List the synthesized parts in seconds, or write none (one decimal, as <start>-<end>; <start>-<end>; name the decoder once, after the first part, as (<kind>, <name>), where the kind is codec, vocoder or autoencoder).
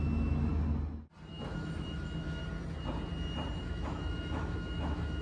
0.0-0.5 (autoencoder, DAC-VAE); 1.3-2.4; 3.6-5.2